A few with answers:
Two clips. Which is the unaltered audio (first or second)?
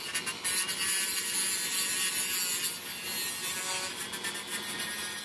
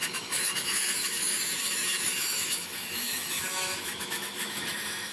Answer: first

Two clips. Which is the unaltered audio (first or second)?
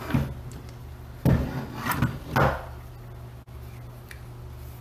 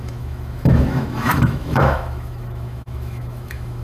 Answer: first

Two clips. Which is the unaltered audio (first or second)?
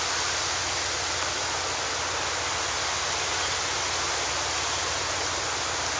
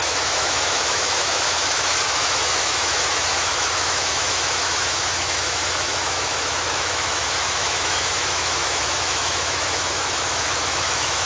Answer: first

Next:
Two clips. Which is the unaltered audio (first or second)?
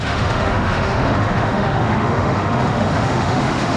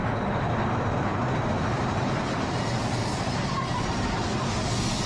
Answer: second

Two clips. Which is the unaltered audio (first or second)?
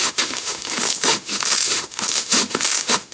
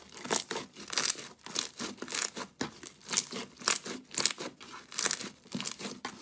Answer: second